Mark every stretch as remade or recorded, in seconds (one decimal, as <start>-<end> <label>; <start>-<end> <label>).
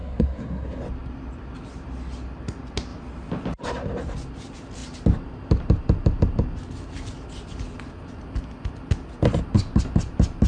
0.0-0.8 remade; 0.8-10.5 recorded